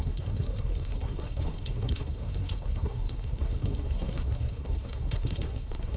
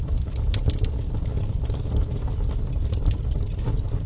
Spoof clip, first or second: first